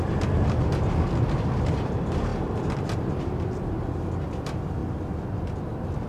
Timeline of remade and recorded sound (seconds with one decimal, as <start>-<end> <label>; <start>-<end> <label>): 0.0-6.1 recorded